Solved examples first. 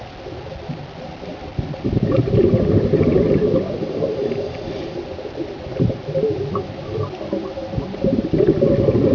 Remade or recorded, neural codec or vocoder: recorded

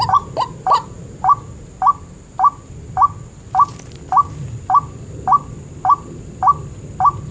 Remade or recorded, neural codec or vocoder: recorded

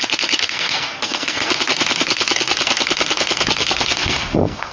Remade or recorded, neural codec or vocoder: remade, codec, SNAC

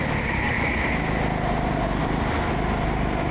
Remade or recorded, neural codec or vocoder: recorded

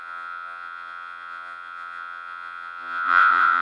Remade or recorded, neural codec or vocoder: remade, vocoder, Vocos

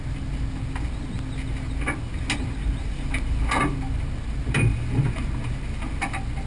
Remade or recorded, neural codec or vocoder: recorded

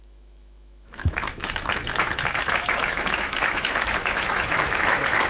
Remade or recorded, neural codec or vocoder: remade, autoencoder, DAC-VAE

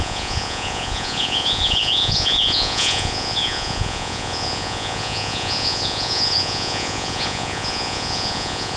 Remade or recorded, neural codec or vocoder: remade, vocoder, Vocos